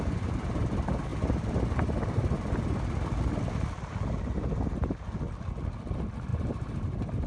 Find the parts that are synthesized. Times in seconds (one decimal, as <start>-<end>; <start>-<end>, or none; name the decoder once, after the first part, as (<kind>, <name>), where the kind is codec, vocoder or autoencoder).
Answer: 6.3-7.3 (vocoder, BigVGAN v2)